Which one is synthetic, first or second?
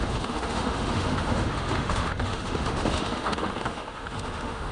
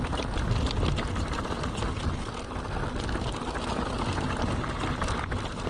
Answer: first